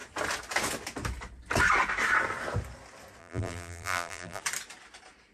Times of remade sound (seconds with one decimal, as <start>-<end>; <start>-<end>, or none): 3.2-4.4